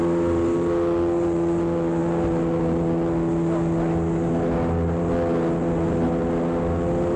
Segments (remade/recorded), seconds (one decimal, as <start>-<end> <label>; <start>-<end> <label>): 0.0-7.2 recorded